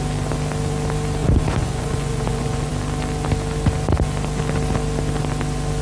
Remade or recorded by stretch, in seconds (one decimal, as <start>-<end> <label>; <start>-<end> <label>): 0.0-1.2 recorded; 1.2-2.7 remade; 2.7-5.8 recorded